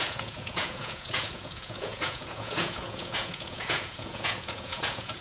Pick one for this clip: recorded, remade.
remade